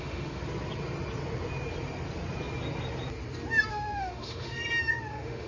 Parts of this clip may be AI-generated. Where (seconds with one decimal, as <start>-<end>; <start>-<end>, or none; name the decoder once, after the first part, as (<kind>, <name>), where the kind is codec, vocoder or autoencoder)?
0.0-0.4 (autoencoder, DAC-VAE); 3.7-4.6; 5.1-5.5